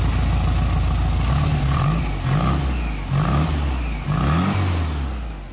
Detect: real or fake real